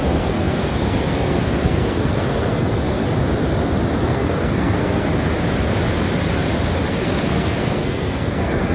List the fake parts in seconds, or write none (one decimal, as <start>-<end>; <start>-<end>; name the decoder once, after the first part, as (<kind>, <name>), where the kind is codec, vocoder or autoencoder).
0.0-3.0 (codec, SNAC); 4.0-5.1; 6.9-8.7